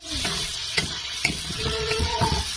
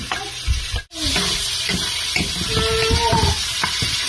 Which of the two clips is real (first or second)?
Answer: second